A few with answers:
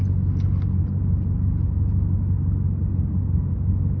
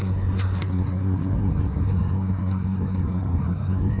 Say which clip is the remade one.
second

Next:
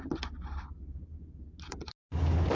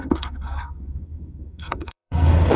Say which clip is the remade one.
second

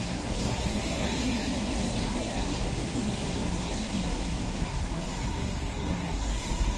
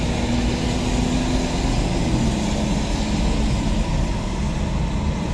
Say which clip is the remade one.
first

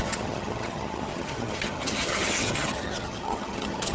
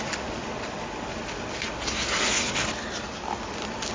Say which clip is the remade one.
first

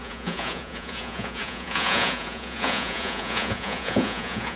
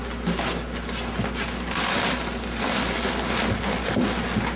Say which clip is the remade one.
first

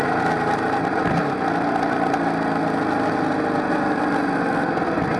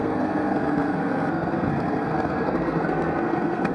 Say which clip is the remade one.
second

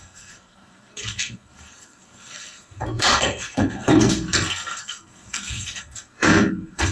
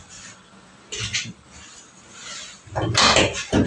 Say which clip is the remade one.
first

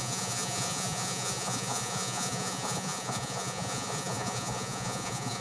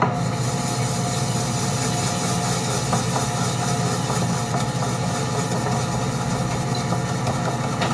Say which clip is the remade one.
first